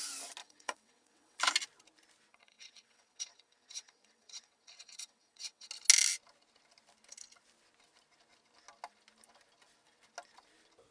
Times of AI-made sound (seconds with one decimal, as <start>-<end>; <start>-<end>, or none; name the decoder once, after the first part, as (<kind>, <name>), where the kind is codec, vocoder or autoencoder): 0.4-1.4 (vocoder, WaveNeXt); 2.3-5.7